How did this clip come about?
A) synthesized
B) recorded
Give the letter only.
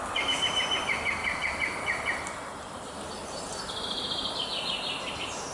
B